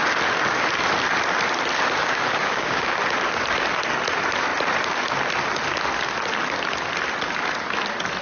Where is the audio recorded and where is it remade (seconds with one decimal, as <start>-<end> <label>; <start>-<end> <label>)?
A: 0.0-2.0 recorded; 2.0-3.0 remade; 3.0-8.2 recorded